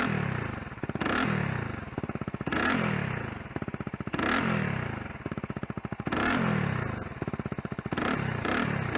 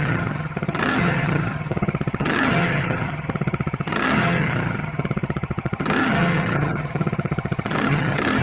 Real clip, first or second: first